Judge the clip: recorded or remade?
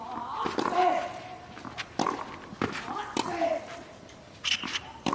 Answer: recorded